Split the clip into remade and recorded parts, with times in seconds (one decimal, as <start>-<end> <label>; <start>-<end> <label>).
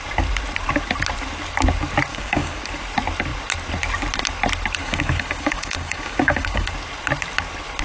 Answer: 0.0-2.1 recorded; 2.1-2.6 remade; 2.6-4.8 recorded; 4.8-6.7 remade; 6.7-7.8 recorded